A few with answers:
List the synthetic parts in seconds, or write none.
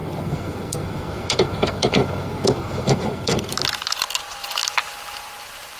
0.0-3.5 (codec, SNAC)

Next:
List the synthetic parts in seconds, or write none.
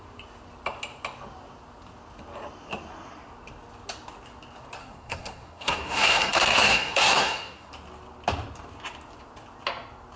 4.8-7.7 (codec, SNAC)